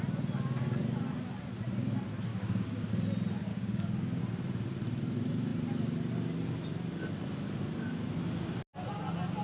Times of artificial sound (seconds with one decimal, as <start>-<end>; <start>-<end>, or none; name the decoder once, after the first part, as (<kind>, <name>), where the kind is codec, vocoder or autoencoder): 2.3-2.9 (codec, DAC); 3.5-4.2